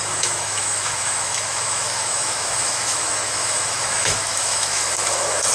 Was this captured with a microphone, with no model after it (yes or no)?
no